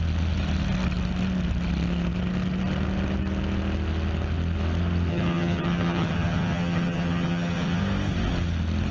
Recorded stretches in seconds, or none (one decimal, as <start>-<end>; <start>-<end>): 0.0-5.1; 7.8-8.9